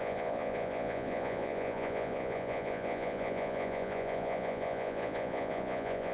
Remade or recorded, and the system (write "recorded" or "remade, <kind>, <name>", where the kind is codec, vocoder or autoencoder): remade, vocoder, Vocos